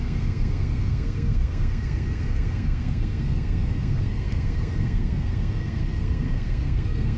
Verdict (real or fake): fake